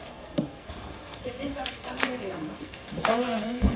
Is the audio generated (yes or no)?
yes